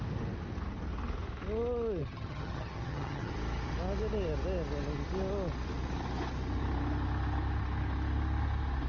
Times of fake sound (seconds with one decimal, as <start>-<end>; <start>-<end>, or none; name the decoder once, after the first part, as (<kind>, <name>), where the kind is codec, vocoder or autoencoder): 2.0-3.3 (vocoder, HiFi-GAN)